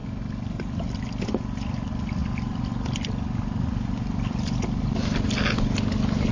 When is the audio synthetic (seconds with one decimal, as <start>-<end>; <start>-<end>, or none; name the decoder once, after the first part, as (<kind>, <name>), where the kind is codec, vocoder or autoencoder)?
none